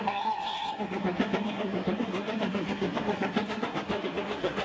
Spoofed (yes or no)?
yes